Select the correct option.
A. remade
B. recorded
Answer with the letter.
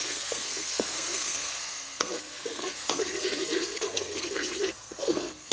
A